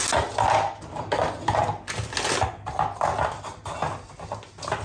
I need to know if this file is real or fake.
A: real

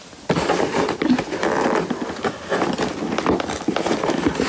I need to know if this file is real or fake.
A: real